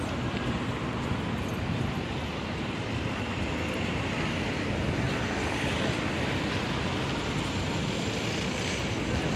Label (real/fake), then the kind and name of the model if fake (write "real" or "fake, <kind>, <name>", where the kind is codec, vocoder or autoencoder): real